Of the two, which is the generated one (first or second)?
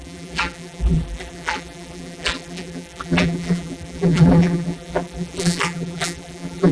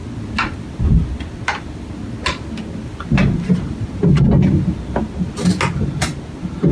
first